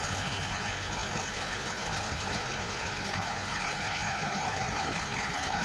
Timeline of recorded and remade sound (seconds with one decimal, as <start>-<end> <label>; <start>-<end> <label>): 0.0-5.6 remade